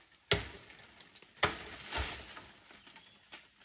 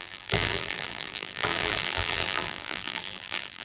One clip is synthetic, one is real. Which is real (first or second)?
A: first